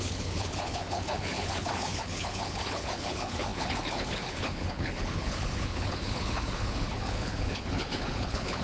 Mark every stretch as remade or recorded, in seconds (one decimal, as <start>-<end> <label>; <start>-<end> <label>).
0.0-8.6 remade